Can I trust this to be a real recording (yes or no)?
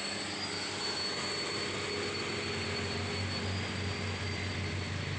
yes